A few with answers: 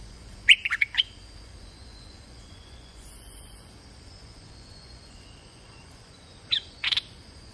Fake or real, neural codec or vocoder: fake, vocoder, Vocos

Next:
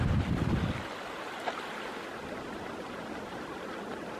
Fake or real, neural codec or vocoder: real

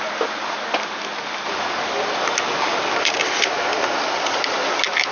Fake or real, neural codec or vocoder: real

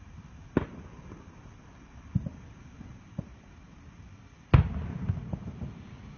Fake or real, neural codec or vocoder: real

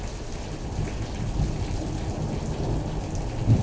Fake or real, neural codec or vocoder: real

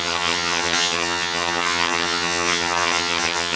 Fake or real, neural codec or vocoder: fake, vocoder, HiFi-GAN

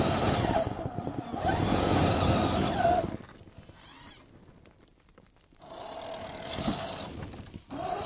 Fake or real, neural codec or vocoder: real